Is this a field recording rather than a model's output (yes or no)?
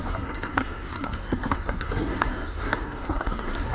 no